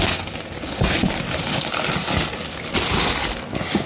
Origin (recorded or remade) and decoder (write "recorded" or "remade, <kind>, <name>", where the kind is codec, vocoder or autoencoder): recorded